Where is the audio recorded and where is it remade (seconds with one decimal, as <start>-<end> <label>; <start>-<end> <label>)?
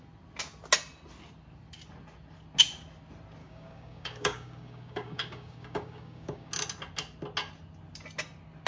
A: 0.0-3.4 recorded; 3.4-6.5 remade; 6.5-8.7 recorded